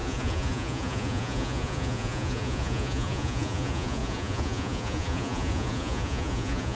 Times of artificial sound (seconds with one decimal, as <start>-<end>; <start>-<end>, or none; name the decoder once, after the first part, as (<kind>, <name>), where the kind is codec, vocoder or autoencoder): 0.0-6.7 (vocoder, Vocos)